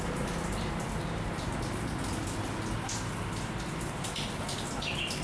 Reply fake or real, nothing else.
real